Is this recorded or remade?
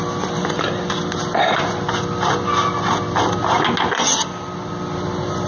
recorded